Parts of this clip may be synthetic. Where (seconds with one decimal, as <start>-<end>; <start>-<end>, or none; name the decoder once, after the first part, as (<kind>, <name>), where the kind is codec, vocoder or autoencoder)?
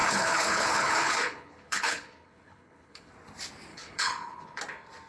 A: 0.0-3.1 (codec, HILCodec); 3.7-4.6